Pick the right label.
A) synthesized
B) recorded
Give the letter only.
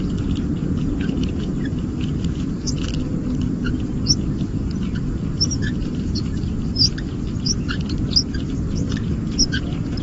B